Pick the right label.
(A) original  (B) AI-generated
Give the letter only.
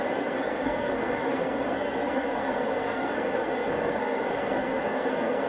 B